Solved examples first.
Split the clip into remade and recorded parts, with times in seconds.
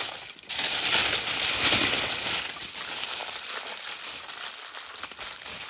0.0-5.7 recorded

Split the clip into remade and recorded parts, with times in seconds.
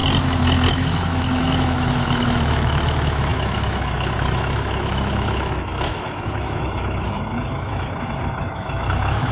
0.0-0.7 recorded; 0.7-9.3 remade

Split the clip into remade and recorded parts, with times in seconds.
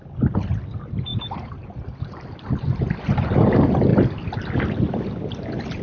0.0-5.8 recorded